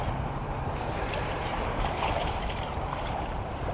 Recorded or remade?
remade